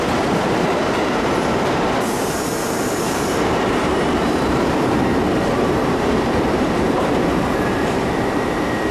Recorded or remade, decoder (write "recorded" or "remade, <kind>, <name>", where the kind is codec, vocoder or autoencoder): remade, vocoder, BigVGAN v2